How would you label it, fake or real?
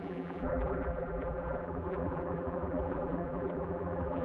fake